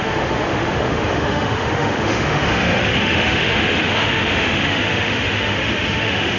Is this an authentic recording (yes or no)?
no